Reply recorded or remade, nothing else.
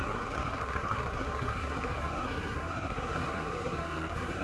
remade